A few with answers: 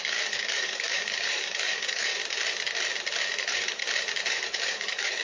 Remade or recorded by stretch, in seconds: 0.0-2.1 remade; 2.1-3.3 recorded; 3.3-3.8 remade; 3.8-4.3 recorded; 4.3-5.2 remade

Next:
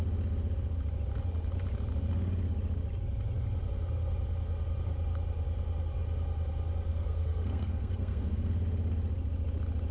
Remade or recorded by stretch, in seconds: 0.0-6.9 recorded; 6.9-8.5 remade; 8.5-9.9 recorded

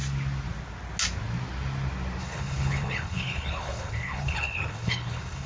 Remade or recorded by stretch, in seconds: 0.0-2.2 recorded; 2.2-5.5 remade